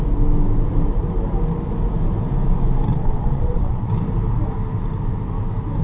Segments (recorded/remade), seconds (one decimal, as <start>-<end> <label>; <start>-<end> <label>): 0.0-2.9 recorded; 2.9-3.9 remade; 3.9-5.8 recorded

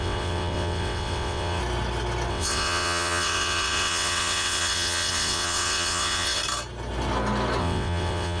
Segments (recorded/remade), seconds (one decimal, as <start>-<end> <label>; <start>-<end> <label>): 0.0-1.6 remade; 1.6-2.3 recorded; 2.3-6.4 remade; 6.4-7.6 recorded; 7.6-8.4 remade